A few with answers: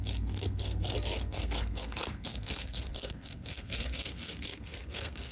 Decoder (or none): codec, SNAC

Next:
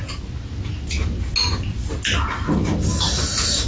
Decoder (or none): none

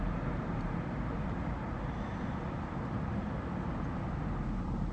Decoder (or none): none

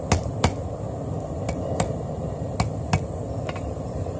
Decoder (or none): none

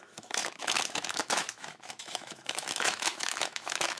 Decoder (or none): autoencoder, DAC-VAE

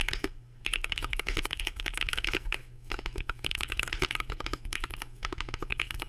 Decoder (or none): codec, SNAC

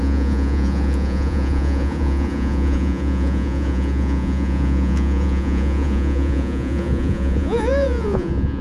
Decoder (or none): vocoder, Vocos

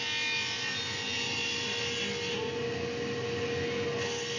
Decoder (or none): none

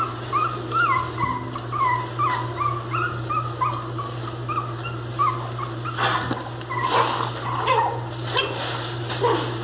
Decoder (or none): none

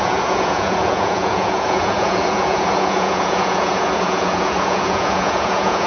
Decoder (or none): vocoder, Vocos